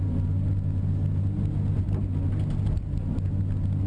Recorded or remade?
recorded